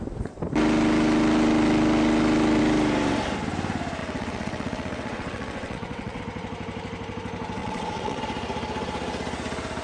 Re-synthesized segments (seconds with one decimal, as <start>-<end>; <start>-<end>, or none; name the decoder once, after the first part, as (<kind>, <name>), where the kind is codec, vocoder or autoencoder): 4.0-6.2 (vocoder, WaveNeXt); 7.6-8.2